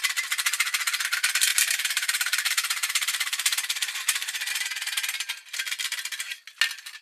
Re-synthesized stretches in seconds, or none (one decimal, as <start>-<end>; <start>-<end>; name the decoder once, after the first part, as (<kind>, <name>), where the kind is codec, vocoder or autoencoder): 1.5-4.5 (vocoder, BigVGAN v2)